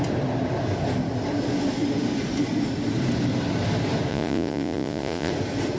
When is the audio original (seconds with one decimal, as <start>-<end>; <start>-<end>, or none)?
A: 0.0-4.1; 5.3-5.8